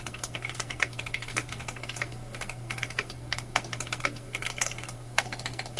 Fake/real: fake